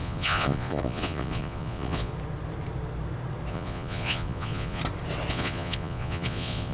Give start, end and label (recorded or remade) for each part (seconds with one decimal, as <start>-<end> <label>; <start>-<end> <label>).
0.0-2.1 remade; 2.1-3.5 recorded; 3.5-4.8 remade; 4.8-5.3 recorded; 5.3-6.7 remade